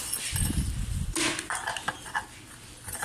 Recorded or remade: recorded